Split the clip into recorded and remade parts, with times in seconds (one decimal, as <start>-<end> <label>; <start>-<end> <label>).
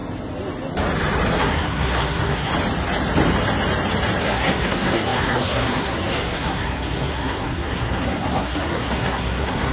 0.0-1.4 recorded; 1.4-2.5 remade; 2.5-4.2 recorded; 4.2-9.7 remade